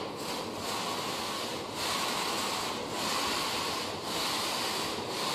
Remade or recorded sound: recorded